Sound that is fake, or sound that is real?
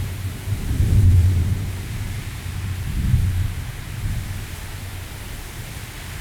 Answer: fake